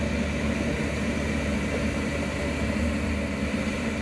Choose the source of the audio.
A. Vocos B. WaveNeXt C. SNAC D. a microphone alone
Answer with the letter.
D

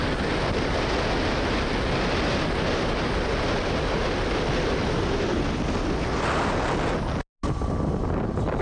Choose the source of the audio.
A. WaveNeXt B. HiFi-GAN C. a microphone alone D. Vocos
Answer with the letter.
C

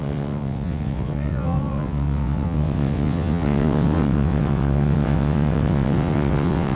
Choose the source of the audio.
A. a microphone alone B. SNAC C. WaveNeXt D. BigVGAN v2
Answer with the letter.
C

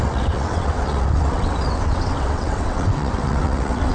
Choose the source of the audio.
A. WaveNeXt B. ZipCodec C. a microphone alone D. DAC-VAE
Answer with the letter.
A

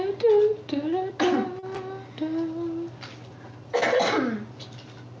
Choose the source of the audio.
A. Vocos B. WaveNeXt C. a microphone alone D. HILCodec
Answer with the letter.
C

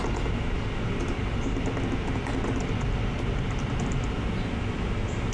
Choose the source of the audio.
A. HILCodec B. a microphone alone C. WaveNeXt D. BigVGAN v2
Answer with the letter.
B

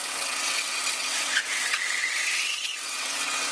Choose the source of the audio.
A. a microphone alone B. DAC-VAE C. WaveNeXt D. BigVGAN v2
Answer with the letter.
C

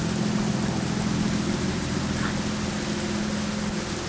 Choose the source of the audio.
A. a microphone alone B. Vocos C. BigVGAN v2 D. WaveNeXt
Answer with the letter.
A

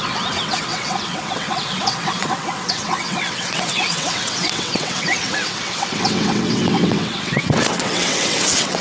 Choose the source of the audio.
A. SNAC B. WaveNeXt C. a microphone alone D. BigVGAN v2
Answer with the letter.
B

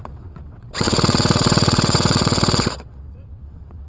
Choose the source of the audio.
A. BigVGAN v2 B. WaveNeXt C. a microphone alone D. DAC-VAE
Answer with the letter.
B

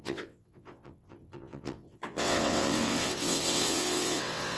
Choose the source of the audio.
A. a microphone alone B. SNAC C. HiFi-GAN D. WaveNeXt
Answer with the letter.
D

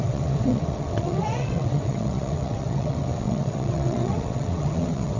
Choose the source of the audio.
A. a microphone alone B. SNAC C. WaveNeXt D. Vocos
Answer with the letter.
C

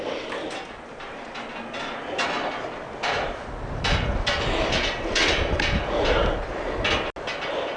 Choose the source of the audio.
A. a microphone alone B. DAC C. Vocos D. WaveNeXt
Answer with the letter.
A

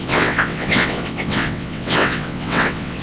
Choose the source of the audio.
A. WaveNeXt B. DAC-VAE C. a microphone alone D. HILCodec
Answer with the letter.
A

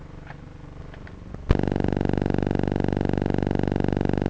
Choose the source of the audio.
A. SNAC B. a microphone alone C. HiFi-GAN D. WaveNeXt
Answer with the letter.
B